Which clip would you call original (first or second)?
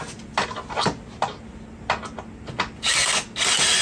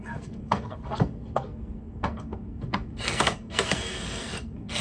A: first